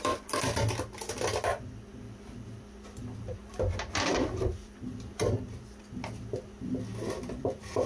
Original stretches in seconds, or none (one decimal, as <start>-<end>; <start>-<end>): 0.0-1.5; 5.8-6.9